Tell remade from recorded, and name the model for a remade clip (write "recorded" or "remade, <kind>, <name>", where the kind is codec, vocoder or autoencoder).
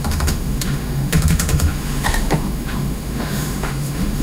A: remade, autoencoder, DAC-VAE